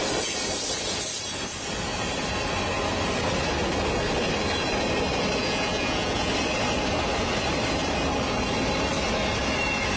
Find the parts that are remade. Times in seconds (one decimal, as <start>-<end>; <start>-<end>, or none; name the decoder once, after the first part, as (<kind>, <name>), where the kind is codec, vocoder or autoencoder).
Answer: 5.4-6.3 (vocoder, Vocos)

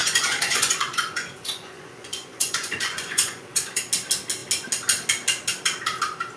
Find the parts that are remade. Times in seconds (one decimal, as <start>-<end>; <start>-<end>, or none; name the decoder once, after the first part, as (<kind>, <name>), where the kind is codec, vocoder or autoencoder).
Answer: 0.0-3.8 (vocoder, Vocos)

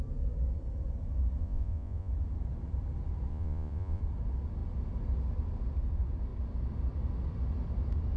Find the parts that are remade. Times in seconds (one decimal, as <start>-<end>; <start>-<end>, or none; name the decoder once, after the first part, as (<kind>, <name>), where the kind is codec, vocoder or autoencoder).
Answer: 1.4-2.1 (vocoder, Vocos); 3.3-4.0

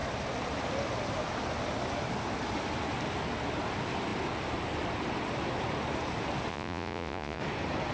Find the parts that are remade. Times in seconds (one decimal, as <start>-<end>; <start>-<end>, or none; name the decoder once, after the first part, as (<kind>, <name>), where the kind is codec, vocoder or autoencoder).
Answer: 6.5-7.4 (vocoder, Vocos)

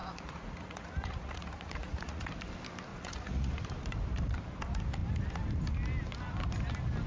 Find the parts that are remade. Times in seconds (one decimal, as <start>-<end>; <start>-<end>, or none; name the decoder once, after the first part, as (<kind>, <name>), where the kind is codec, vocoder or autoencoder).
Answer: 0.0-2.3 (vocoder, Vocos); 2.9-3.5

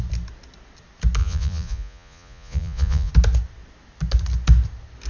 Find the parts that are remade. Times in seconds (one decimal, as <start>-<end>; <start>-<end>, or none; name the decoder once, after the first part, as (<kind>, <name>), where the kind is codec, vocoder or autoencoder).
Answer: 1.2-3.1 (vocoder, Vocos)

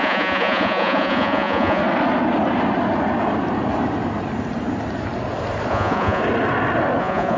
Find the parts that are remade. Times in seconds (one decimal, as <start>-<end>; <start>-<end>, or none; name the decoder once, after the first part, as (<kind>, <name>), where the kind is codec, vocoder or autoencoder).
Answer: 0.0-1.8 (vocoder, Vocos); 5.7-6.2; 7.0-7.4

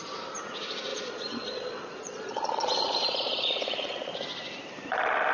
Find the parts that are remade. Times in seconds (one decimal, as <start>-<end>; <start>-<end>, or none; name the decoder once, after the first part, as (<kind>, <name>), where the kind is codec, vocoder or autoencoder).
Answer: 0.9-4.1 (vocoder, Vocos)